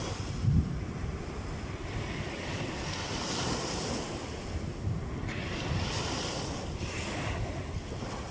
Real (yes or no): yes